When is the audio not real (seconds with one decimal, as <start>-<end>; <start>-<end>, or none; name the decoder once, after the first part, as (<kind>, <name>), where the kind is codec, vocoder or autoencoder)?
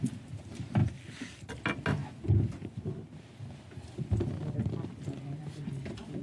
none